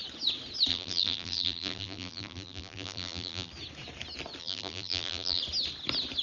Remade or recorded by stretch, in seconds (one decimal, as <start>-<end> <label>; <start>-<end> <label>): 0.0-0.7 recorded; 0.7-3.5 remade; 3.5-4.4 recorded; 4.4-5.4 remade; 5.4-6.2 recorded